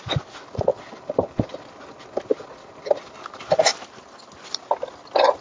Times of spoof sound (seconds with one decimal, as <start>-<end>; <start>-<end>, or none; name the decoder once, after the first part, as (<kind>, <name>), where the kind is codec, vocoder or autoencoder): none